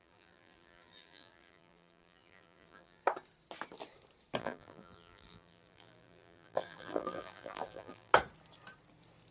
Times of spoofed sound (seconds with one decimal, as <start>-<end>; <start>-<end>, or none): 0.0-3.0; 4.4-8.1